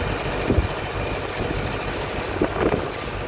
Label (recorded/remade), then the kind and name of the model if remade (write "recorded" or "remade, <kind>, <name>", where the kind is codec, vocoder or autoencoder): recorded